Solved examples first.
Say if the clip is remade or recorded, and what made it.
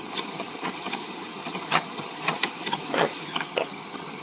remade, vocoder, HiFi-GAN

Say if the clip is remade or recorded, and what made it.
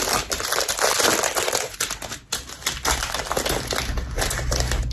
recorded